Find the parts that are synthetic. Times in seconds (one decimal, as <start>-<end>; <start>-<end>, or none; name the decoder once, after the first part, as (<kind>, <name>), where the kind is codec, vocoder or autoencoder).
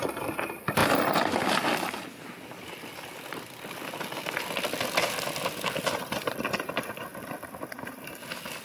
0.0-0.8 (vocoder, BigVGAN v2); 4.8-7.1